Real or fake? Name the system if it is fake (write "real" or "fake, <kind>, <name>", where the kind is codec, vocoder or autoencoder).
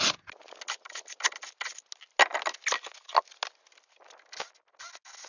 real